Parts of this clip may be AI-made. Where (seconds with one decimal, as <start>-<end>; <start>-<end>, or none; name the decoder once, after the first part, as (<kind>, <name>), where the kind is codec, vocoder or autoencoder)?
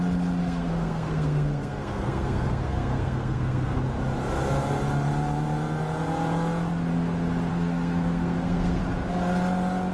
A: 0.4-3.8 (codec, SNAC); 7.5-8.8